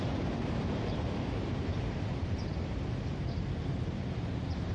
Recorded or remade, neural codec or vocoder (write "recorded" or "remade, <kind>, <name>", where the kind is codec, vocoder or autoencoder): remade, vocoder, BigVGAN v2